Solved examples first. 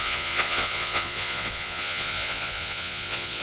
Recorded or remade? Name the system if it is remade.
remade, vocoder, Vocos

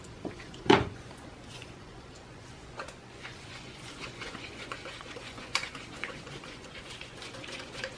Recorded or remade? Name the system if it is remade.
remade, vocoder, Vocos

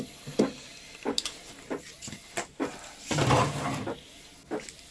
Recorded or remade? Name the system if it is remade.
recorded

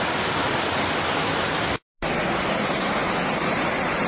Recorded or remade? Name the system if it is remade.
recorded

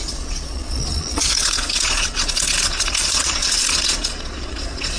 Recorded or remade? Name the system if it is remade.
remade, vocoder, Vocos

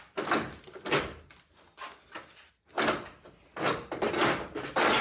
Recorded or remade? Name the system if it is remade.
recorded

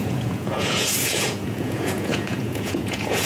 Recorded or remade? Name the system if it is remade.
remade, vocoder, Vocos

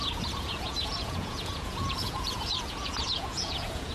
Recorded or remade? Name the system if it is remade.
remade, vocoder, Vocos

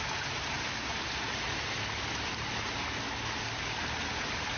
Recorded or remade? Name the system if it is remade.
recorded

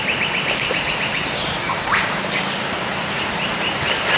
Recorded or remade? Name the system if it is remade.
recorded